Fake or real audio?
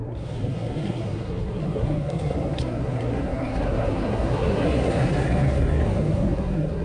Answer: fake